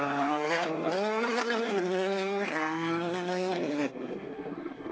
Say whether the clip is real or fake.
fake